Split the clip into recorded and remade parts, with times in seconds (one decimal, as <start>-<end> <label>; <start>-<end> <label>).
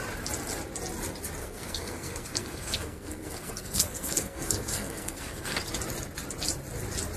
0.0-1.4 recorded; 1.4-5.6 remade; 5.6-7.2 recorded